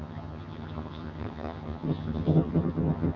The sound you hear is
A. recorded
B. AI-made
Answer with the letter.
B